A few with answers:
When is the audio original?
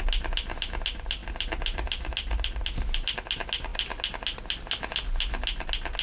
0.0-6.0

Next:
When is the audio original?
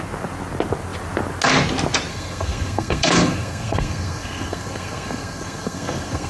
0.0-2.1